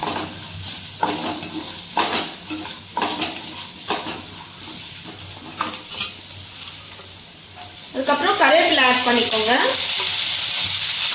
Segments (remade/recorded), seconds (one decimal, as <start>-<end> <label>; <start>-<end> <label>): 0.0-11.1 recorded